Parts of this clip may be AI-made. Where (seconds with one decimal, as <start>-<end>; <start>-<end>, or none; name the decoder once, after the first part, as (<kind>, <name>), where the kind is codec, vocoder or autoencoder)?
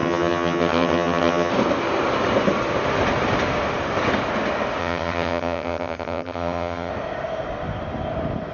0.0-1.5 (vocoder, HiFi-GAN); 4.8-6.9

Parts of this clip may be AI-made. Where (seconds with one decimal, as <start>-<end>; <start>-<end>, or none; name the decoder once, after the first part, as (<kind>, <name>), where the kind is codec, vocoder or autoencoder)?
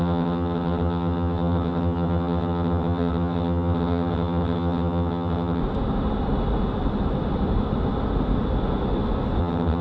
0.0-5.6 (vocoder, HiFi-GAN); 9.4-9.8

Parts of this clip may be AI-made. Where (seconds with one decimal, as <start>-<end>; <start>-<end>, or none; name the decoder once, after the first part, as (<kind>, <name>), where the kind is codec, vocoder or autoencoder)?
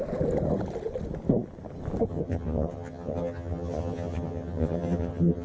2.1-5.4 (vocoder, HiFi-GAN)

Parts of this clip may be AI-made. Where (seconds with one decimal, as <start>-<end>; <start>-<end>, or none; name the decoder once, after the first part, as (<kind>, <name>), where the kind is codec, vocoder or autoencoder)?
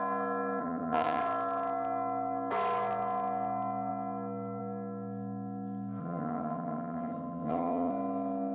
0.6-1.2 (vocoder, HiFi-GAN); 6.0-7.9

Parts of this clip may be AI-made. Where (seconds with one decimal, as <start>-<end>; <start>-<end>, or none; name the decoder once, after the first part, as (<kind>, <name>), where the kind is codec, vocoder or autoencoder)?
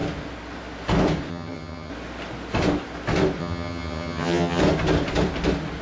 1.3-1.9 (vocoder, HiFi-GAN); 3.4-4.6